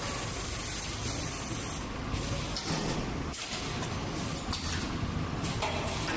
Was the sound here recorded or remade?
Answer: recorded